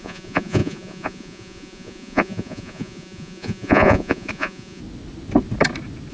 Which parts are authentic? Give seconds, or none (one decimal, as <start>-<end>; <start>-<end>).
4.8-6.1